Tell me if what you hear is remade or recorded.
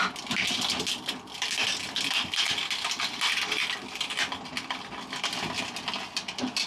recorded